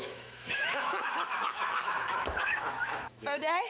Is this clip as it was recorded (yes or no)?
no